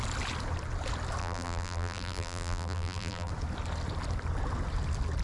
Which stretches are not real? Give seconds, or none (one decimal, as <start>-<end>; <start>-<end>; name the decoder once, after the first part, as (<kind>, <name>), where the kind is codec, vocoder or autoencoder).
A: 1.2-3.3 (vocoder, BigVGAN v2)